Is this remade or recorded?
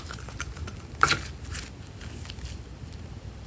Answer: recorded